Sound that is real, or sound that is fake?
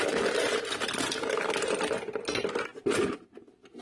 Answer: real